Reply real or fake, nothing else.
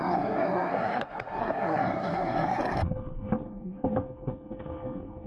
fake